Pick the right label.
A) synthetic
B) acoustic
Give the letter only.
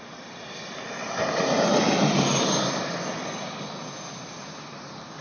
B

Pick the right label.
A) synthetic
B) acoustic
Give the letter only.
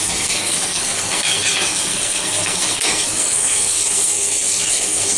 A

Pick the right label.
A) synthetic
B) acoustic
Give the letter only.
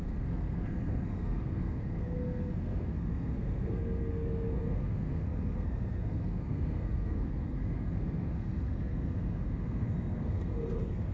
A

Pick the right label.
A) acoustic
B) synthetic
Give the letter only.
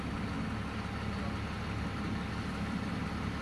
A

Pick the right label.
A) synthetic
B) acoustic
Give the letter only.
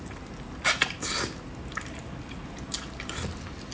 B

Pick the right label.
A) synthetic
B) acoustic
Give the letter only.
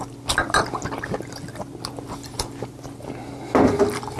B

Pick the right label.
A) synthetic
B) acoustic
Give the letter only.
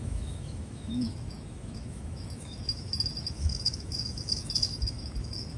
A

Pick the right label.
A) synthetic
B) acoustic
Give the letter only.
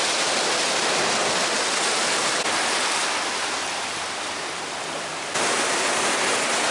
B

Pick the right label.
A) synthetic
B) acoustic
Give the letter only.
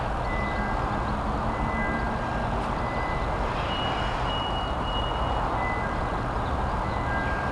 B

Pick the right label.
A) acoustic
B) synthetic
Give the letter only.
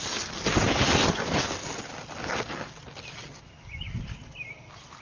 A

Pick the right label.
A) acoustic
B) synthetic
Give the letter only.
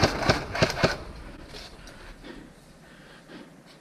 A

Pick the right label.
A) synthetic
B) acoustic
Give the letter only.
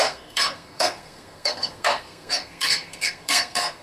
A